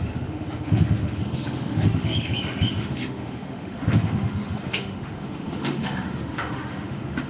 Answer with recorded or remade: remade